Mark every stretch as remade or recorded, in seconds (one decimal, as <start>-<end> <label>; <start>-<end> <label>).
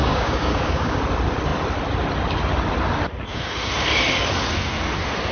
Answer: 0.0-1.0 remade; 1.0-5.3 recorded